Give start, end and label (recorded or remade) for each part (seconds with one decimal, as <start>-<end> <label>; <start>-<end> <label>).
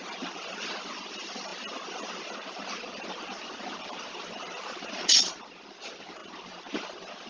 0.0-7.3 remade